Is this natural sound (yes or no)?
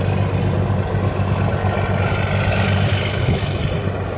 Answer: yes